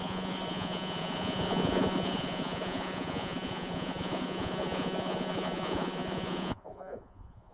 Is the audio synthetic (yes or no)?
yes